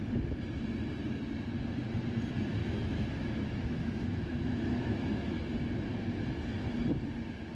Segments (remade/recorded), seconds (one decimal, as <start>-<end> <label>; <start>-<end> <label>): 0.0-2.6 recorded; 2.6-5.4 remade; 5.4-7.5 recorded